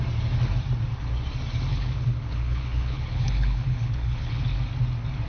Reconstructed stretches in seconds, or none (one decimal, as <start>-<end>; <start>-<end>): 1.7-4.4